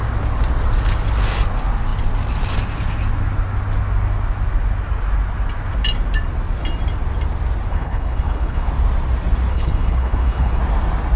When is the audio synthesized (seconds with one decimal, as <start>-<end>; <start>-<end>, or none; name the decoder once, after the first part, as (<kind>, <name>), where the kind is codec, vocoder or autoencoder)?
7.7-8.7 (codec, HILCodec); 9.5-10.6